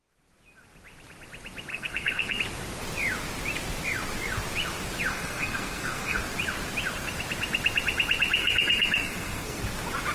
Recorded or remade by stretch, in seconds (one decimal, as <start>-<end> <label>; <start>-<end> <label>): 0.0-1.7 recorded; 1.7-2.4 remade; 2.4-5.1 recorded; 5.1-6.2 remade; 6.2-8.4 recorded; 8.4-9.6 remade; 9.6-10.1 recorded